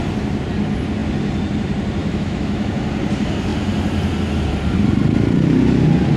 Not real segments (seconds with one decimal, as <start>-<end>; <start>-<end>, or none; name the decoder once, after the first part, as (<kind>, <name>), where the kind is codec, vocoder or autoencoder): 2.0-2.7 (autoencoder, DAC-VAE)